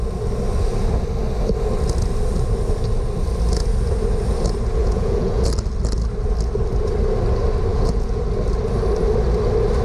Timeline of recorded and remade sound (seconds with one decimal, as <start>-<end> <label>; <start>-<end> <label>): 0.0-4.8 recorded; 4.8-5.5 remade; 5.5-7.7 recorded; 7.7-8.2 remade; 8.2-9.8 recorded